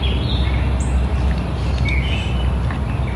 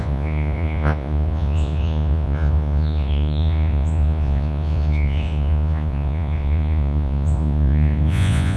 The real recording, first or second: first